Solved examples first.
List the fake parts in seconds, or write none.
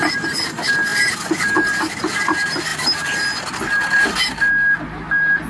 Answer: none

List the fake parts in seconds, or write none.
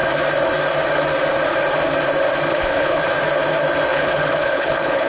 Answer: 2.5-3.0 (codec, HILCodec); 3.9-5.1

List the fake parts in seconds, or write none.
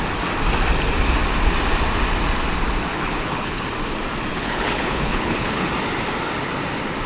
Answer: 2.9-3.6 (codec, HILCodec); 4.3-5.7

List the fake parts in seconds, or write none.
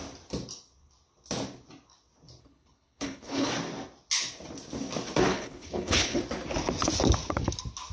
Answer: 2.4-3.5 (codec, HILCodec); 5.3-6.2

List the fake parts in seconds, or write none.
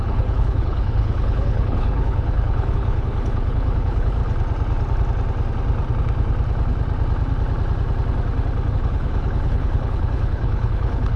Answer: 0.0-4.2 (codec, HILCodec); 8.7-11.2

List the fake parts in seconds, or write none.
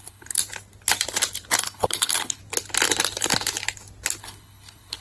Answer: 0.0-0.4 (codec, HILCodec); 1.6-2.4; 4.2-5.0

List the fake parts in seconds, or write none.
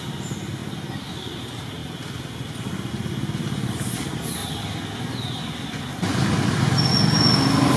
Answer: none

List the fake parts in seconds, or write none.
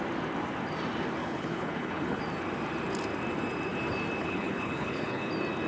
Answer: 1.2-2.2 (codec, HILCodec); 4.2-5.3